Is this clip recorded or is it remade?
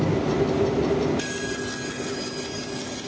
recorded